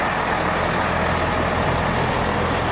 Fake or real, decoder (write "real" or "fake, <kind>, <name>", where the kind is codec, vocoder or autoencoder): real